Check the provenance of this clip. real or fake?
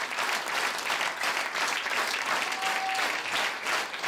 real